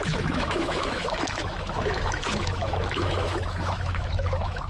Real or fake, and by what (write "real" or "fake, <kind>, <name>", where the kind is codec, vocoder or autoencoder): fake, autoencoder, DAC-VAE